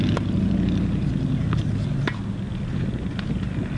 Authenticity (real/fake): real